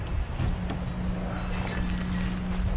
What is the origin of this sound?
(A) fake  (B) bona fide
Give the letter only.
B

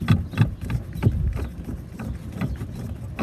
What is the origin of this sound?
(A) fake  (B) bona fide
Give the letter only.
B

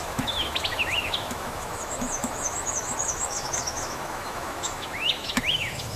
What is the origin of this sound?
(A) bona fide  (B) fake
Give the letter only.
B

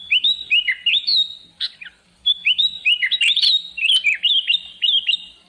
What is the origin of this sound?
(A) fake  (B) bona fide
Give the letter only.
A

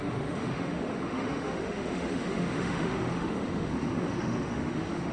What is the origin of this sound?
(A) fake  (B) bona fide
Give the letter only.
A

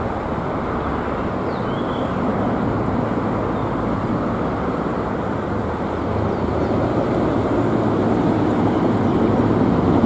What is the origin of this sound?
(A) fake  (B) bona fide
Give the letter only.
B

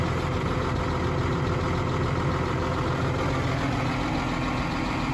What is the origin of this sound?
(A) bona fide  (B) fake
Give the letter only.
A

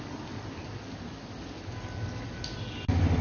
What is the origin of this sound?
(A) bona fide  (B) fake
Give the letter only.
A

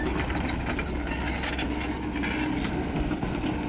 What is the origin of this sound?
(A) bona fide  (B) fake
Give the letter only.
A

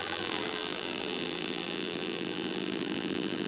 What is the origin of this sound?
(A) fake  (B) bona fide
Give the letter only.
A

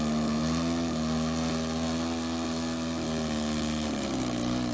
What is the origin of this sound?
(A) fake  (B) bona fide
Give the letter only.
B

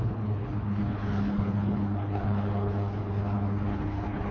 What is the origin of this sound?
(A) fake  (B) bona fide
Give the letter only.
A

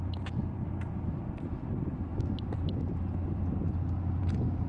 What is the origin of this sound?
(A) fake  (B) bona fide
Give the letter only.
A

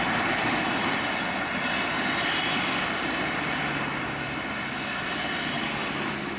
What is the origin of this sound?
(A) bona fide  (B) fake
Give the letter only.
A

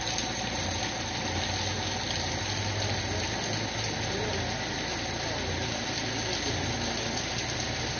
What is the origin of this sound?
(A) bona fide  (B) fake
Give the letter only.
A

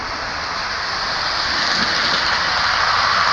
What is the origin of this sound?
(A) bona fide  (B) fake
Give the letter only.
A